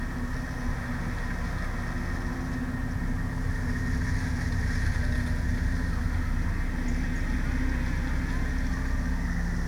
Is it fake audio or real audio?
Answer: real